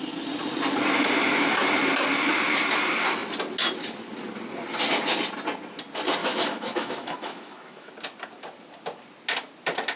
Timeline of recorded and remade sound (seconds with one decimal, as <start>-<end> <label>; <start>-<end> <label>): 0.0-6.2 recorded; 6.2-7.9 remade; 7.9-10.0 recorded